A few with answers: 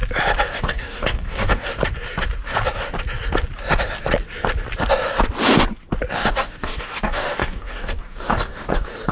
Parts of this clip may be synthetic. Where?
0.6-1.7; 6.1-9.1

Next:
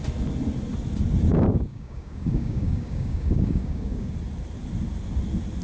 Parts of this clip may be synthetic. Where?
1.3-4.1

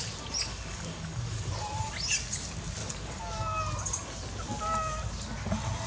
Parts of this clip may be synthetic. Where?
0.5-1.5; 2.8-3.4

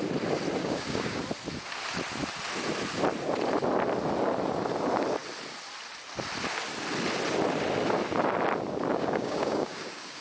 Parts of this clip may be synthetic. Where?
0.6-1.2; 8.9-10.2

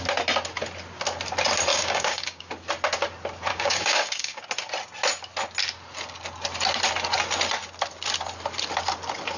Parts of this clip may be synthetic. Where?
1.7-2.5; 3.5-4.4

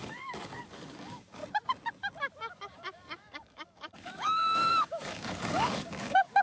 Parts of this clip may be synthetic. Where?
0.0-1.4; 2.5-6.4